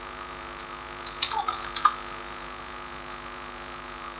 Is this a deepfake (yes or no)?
yes